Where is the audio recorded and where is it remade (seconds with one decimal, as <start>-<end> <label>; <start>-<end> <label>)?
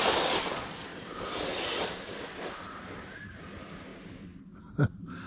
0.0-5.3 recorded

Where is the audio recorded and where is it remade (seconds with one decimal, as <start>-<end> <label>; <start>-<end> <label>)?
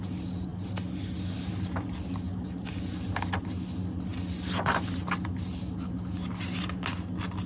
0.0-7.5 recorded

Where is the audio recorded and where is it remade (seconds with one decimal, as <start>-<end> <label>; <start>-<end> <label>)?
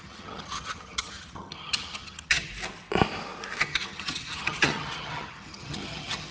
0.0-2.5 remade; 2.5-3.6 recorded; 3.6-6.3 remade